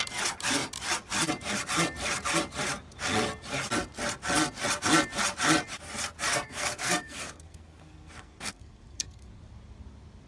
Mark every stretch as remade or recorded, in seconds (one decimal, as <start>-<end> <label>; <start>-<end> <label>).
0.0-6.3 recorded; 6.3-9.4 remade; 9.4-10.3 recorded